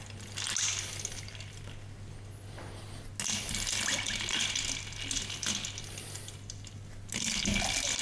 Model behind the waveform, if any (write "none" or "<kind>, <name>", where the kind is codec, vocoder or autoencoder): none